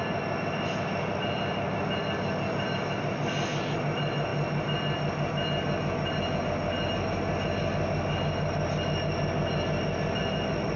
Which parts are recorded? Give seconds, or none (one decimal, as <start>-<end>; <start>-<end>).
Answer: 0.0-10.8